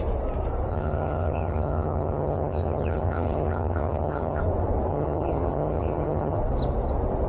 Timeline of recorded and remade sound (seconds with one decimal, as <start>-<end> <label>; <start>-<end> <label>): 0.0-0.7 recorded; 0.7-4.4 remade; 4.4-4.9 recorded; 4.9-6.4 remade; 6.4-7.3 recorded